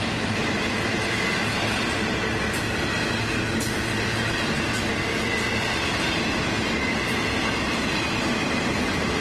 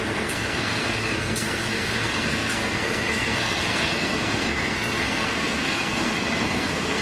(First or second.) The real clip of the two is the first